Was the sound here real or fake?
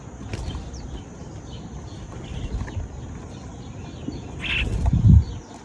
real